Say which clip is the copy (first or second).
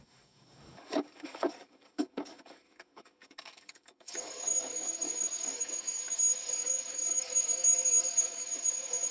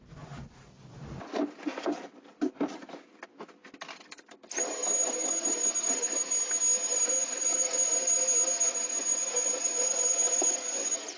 first